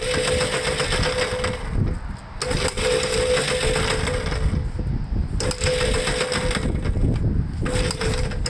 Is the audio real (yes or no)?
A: yes